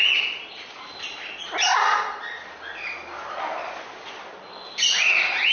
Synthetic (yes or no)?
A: no